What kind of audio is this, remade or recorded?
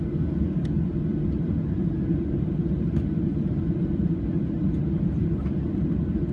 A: remade